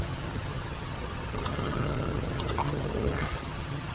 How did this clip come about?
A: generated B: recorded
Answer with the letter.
A